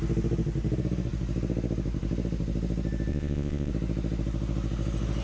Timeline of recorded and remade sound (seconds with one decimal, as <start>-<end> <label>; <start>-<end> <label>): 0.0-3.1 recorded; 3.1-3.7 remade; 3.7-5.2 recorded